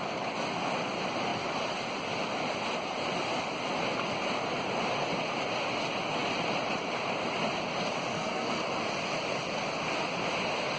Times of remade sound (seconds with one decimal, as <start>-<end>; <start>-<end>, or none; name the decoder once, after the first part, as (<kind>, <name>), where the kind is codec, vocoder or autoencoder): 8.1-8.6 (codec, SNAC)